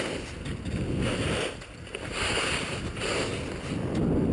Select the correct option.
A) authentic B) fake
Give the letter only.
A